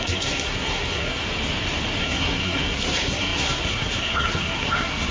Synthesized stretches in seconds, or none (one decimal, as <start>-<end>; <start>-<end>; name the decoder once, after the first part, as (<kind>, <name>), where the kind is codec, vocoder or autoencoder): 0.0-1.2 (codec, SNAC); 2.0-5.1